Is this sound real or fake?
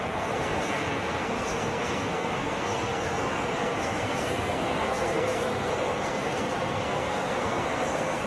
fake